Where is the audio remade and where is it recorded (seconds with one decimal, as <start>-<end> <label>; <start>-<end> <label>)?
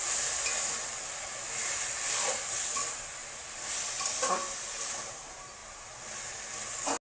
0.0-7.1 recorded